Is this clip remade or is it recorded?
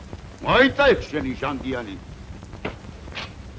recorded